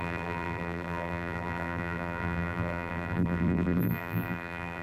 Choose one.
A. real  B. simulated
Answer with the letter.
B